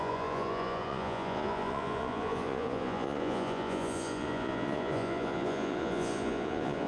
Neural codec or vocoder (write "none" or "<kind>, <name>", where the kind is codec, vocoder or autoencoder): vocoder, Vocos